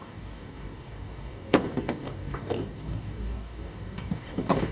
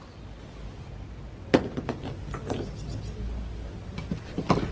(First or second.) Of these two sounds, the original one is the second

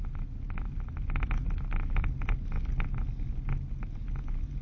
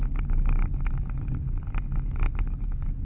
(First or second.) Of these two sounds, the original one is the first